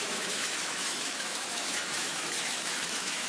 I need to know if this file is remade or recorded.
remade